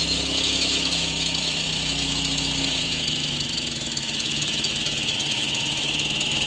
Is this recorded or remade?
remade